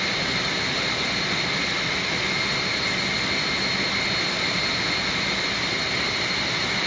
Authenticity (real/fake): real